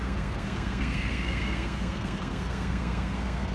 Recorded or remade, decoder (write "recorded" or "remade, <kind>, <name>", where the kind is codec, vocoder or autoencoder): remade, codec, SNAC